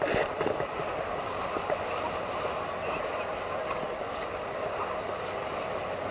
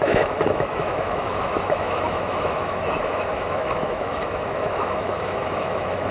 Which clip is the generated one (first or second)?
second